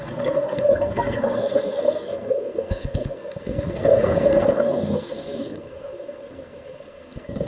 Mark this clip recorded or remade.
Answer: remade